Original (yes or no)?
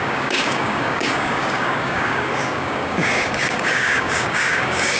no